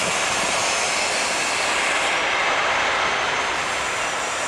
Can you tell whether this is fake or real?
fake